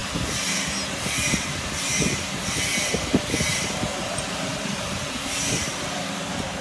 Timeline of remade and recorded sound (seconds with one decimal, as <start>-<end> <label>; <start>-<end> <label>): 0.0-0.9 recorded; 0.9-2.7 remade; 2.7-3.8 recorded; 3.8-6.6 remade